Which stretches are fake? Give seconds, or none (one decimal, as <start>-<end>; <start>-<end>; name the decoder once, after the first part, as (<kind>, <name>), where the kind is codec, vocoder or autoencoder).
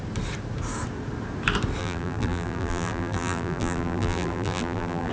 1.8-5.1 (vocoder, BigVGAN v2)